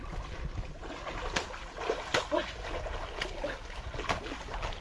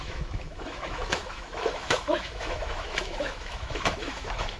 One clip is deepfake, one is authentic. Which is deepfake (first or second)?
second